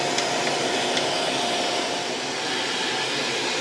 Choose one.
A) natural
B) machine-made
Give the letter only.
A